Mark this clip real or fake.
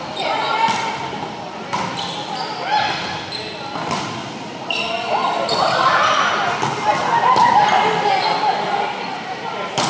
real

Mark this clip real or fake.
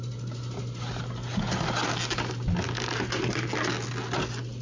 real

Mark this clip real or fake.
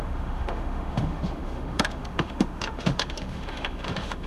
fake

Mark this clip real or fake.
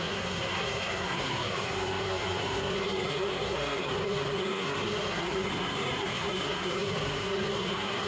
fake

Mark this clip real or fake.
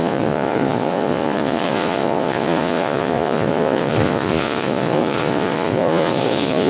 fake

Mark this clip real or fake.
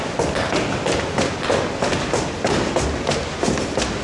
real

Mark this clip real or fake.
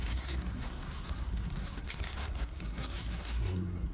fake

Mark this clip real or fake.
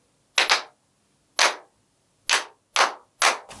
real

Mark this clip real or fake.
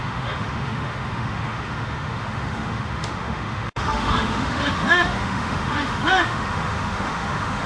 fake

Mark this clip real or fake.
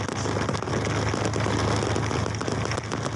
real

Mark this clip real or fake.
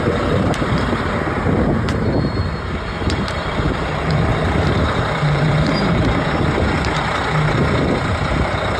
fake